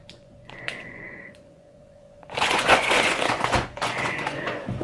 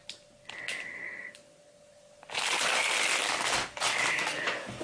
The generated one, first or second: first